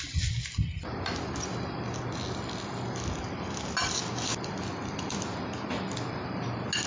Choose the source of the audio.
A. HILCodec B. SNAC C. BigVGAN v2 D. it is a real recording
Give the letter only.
D